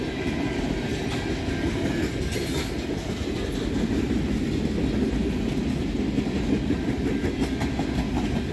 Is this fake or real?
real